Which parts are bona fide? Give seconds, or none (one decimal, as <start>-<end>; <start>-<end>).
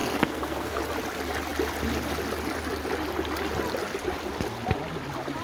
0.8-5.4